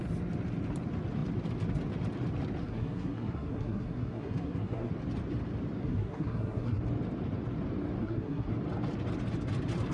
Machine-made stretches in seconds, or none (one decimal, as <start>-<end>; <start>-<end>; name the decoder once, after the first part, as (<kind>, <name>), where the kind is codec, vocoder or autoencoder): 2.6-4.9 (codec, SNAC); 5.8-6.8; 8.0-8.5